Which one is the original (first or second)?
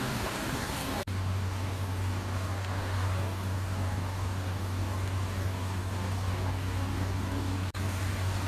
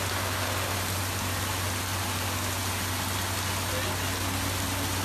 second